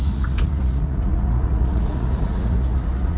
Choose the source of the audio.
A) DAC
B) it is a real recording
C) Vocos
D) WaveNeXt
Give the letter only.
C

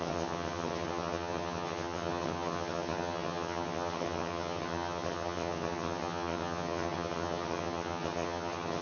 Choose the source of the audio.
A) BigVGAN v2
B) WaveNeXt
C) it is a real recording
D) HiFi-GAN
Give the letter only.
D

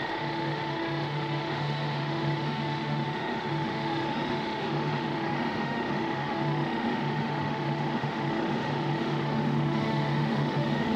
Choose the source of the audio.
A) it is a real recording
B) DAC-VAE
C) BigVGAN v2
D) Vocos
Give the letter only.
B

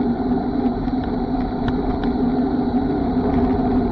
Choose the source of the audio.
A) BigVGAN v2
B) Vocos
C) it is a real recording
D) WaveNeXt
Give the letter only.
C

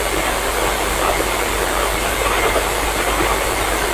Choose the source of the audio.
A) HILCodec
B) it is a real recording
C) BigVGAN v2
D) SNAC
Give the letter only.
B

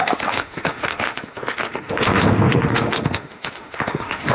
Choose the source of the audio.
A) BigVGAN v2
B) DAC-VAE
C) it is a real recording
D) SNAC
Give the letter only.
B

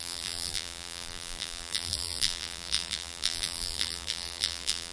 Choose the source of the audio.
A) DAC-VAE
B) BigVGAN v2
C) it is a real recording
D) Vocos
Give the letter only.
B